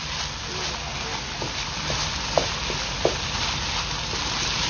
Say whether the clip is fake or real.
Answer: real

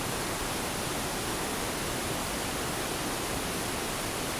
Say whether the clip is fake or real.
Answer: real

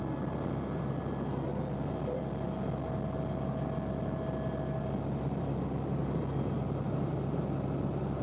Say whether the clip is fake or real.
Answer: real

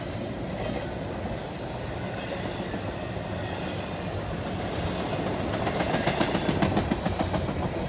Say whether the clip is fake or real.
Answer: real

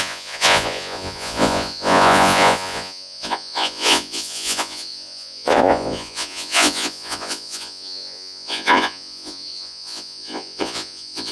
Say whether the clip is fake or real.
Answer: fake